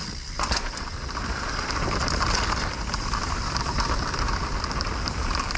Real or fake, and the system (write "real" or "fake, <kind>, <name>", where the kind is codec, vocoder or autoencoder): real